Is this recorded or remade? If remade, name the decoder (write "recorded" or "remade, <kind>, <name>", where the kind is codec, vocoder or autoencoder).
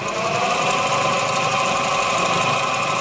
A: recorded